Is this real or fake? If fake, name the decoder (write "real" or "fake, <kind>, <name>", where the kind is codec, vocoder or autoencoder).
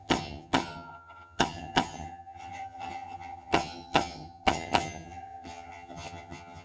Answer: fake, vocoder, HiFi-GAN